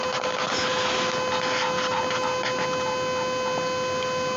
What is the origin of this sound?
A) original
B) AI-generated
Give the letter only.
A